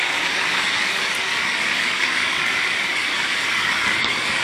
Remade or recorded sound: remade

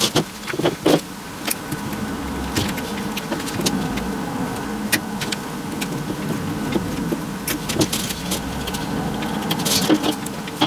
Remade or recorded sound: recorded